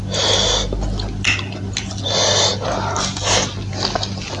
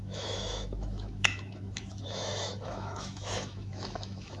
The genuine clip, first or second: first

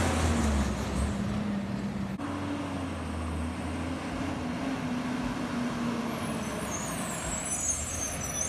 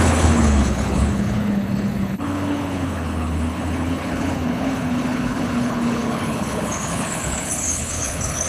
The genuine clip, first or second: first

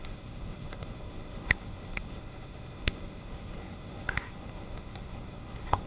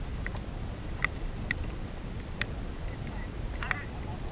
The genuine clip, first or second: second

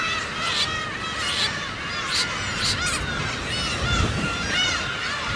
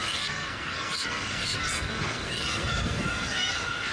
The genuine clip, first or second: first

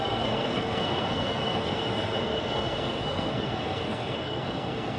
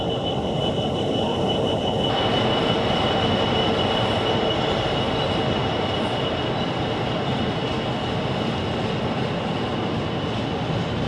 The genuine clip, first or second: second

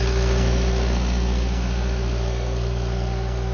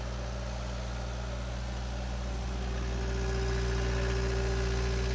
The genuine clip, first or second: second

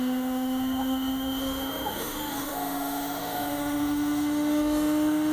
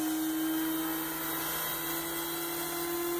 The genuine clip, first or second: second